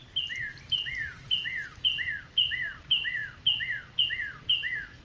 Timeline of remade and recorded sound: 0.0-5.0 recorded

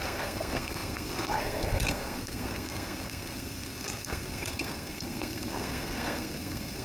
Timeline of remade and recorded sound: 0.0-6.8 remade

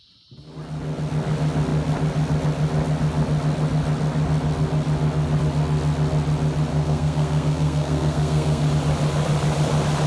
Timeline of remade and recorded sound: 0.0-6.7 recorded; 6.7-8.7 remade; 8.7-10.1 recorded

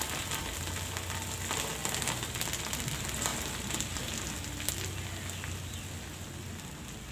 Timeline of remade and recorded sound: 0.0-7.1 recorded

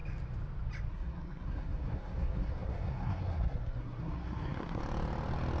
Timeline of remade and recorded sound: 0.0-0.9 recorded; 0.9-4.8 remade; 4.8-5.6 recorded

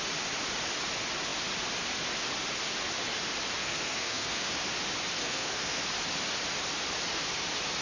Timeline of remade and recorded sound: 0.0-3.6 recorded; 3.6-4.5 remade; 4.5-5.2 recorded; 5.2-5.8 remade; 5.8-7.8 recorded